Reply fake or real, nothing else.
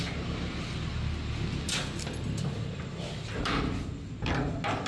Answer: real